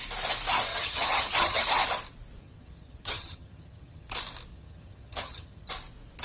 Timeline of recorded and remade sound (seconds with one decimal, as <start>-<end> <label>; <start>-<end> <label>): 0.0-0.7 recorded; 0.7-1.6 remade; 1.6-2.4 recorded; 2.4-4.1 remade; 4.1-4.5 recorded; 4.5-5.7 remade; 5.7-6.2 recorded

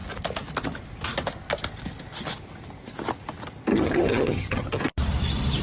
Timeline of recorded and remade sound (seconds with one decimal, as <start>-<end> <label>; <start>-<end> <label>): 0.0-3.7 recorded; 3.7-4.8 remade; 4.8-5.6 recorded

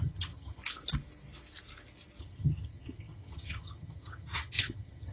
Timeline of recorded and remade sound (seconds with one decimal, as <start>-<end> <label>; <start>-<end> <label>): 0.0-0.6 remade; 0.6-2.2 recorded; 2.2-5.1 remade

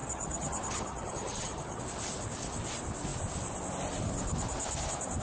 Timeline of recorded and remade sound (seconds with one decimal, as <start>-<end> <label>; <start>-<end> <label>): 0.0-1.8 remade; 1.8-5.2 recorded

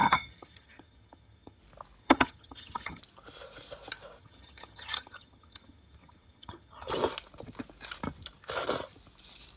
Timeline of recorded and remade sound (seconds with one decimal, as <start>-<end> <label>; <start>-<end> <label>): 0.0-1.6 remade; 1.6-2.0 recorded; 2.0-3.0 remade; 3.0-4.2 recorded; 4.2-6.9 remade; 6.9-9.6 recorded